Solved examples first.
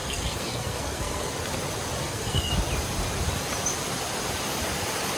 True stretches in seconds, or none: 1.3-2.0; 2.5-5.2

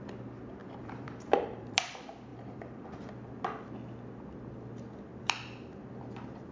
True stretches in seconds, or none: 0.0-0.6; 1.8-2.3; 3.1-5.1; 6.0-6.5

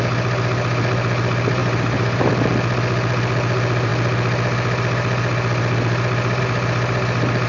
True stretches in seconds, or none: 0.0-1.6; 2.3-7.5

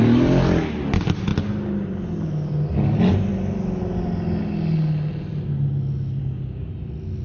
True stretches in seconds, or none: 0.0-6.2; 6.7-7.2

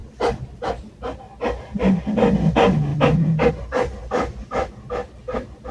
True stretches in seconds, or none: 1.4-2.9; 3.5-4.4

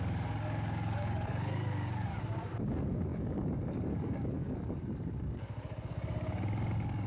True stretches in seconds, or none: 2.1-2.7

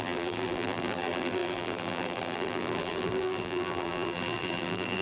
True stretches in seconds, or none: none

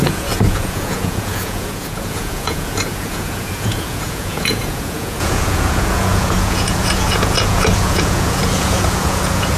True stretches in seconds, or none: none